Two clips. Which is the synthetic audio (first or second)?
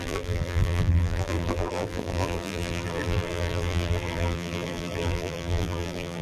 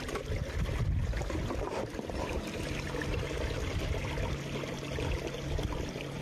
first